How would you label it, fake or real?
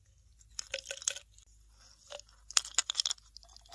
real